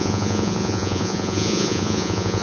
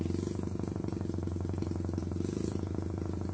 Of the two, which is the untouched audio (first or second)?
second